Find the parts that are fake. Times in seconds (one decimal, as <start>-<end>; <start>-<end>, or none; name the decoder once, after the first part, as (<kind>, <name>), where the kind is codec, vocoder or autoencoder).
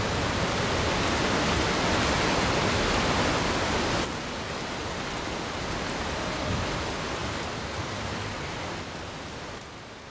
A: none